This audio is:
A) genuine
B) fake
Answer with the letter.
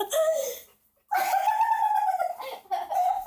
A